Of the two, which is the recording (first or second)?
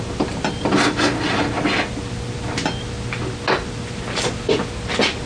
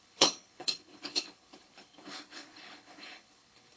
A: first